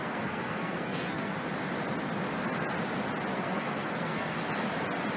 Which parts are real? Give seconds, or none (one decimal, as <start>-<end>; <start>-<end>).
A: 1.3-3.3; 4.3-5.2